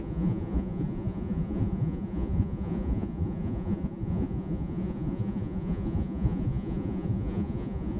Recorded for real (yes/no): no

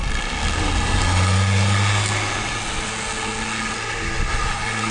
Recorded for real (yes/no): yes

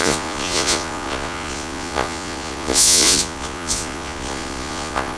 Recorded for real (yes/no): no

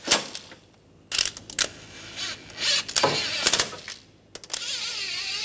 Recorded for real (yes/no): yes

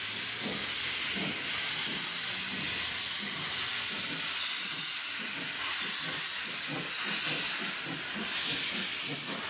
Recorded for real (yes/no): yes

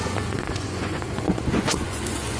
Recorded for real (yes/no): no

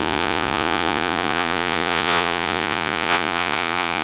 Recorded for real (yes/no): no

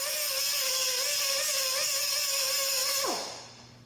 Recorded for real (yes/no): yes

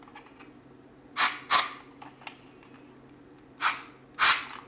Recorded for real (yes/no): yes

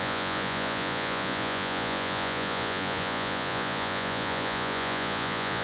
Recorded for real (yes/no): no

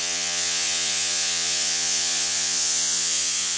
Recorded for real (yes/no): no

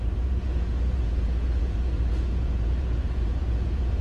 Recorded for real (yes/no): no